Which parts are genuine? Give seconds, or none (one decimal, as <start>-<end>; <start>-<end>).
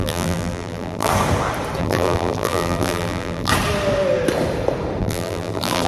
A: 1.1-1.8; 3.5-5.0